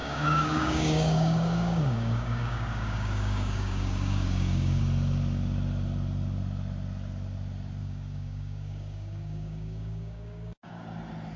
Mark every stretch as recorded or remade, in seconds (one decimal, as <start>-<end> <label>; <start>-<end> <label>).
0.0-4.8 remade; 4.8-7.8 recorded; 7.8-10.7 remade; 10.7-11.4 recorded